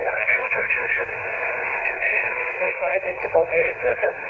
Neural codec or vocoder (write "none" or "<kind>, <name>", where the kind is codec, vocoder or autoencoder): codec, SNAC